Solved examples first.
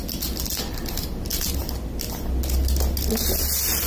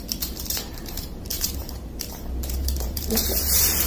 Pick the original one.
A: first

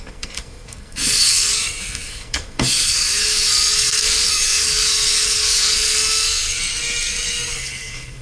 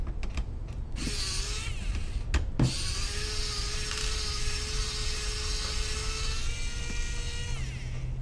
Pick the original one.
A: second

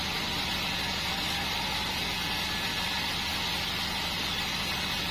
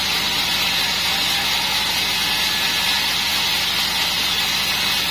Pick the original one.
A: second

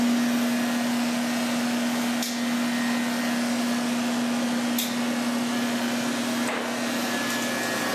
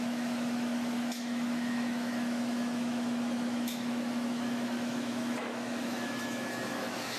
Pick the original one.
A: first